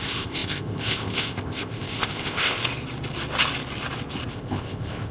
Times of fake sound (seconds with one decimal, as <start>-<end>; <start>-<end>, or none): 0.0-2.6; 4.3-5.1